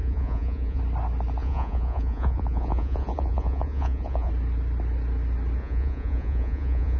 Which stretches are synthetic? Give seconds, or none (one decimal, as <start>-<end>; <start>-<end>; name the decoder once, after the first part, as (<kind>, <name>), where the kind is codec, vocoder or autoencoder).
0.0-0.8 (vocoder, Vocos); 1.4-4.3; 5.6-7.0